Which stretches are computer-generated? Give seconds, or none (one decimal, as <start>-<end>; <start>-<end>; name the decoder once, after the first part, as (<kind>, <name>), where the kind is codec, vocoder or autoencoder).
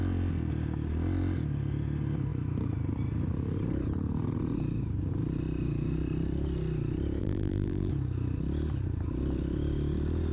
7.2-7.9 (vocoder, BigVGAN v2)